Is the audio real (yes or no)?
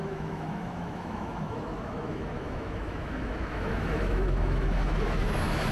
no